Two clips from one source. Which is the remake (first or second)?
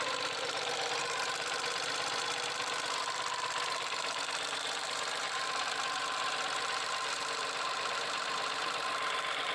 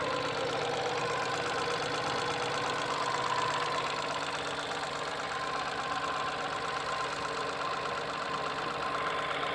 first